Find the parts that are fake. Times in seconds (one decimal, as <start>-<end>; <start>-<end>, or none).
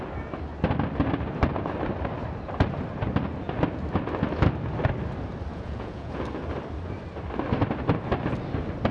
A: 5.5-6.2